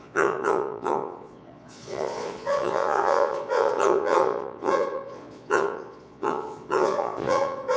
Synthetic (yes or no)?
yes